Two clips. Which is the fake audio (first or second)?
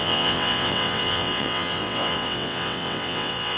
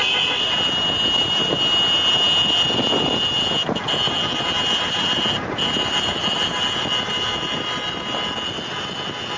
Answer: first